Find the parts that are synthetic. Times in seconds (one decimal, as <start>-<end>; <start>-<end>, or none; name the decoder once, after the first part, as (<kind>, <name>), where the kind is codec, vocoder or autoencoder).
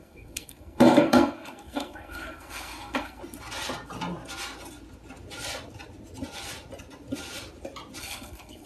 0.0-3.2 (codec, SNAC); 8.0-8.7